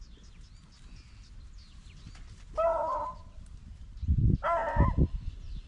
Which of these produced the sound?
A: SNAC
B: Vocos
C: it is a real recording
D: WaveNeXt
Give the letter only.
C